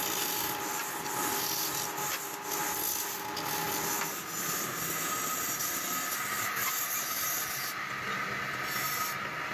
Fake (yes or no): no